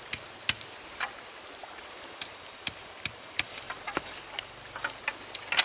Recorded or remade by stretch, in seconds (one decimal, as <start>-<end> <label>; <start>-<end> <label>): 0.0-1.6 recorded; 1.6-5.0 remade; 5.0-5.6 recorded